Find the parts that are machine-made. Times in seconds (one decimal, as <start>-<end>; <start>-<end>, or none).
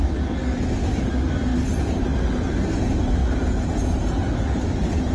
none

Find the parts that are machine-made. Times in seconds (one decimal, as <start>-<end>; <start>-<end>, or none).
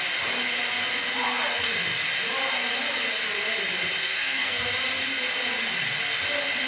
4.0-4.6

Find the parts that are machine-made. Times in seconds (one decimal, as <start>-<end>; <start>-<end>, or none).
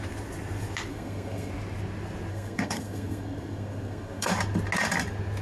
0.9-1.5; 2.3-4.3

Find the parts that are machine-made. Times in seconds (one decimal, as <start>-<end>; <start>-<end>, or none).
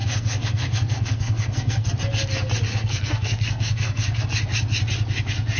0.0-1.9; 2.7-4.2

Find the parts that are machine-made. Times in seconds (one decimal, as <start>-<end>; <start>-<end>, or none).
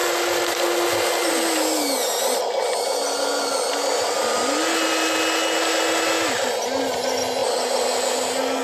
none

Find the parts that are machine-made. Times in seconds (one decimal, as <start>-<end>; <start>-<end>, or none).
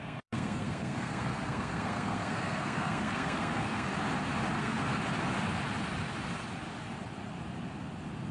0.0-3.9; 4.6-5.0